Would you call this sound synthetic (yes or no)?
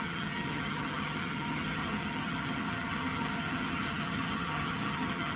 yes